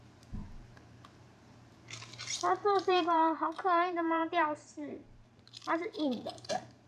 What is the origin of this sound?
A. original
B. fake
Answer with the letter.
B